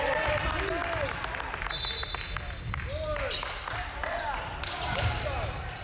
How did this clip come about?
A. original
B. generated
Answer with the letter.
A